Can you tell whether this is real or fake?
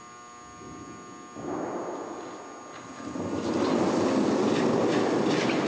real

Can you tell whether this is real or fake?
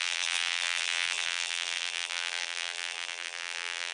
fake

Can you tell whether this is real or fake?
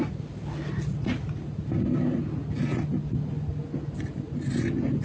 real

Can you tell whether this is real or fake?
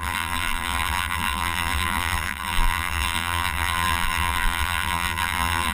fake